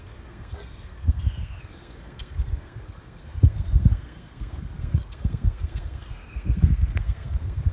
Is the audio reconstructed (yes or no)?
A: yes